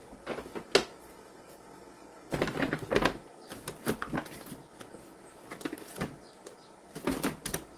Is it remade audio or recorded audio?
recorded